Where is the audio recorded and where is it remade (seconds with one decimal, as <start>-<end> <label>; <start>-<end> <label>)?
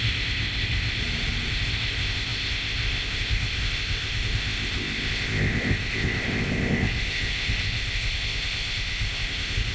0.0-1.0 remade; 1.0-1.5 recorded; 1.5-9.7 remade